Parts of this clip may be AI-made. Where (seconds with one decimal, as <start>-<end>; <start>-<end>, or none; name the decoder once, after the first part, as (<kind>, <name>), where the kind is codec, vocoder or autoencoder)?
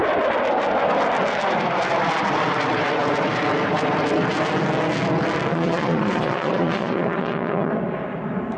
5.5-7.7 (vocoder, Vocos)